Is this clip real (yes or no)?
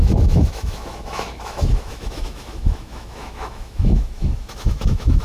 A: no